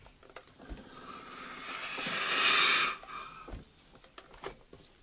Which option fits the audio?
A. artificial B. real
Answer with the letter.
B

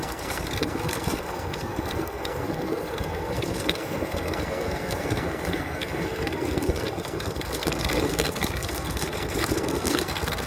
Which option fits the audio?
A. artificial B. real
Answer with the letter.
A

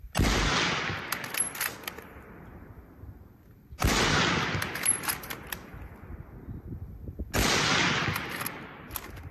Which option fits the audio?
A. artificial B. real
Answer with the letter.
B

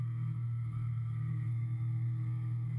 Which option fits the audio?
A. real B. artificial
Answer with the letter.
B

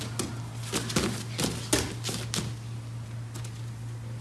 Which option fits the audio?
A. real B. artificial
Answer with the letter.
A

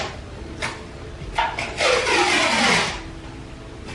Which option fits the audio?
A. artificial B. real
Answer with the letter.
B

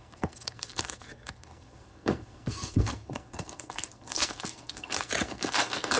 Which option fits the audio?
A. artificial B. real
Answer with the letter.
A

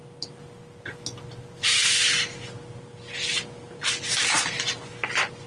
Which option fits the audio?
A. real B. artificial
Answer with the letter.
A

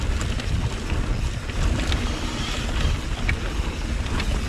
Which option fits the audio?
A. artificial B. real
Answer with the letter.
B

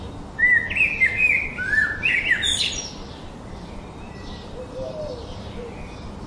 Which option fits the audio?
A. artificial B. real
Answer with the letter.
B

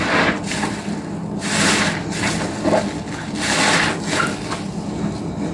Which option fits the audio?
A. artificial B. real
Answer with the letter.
B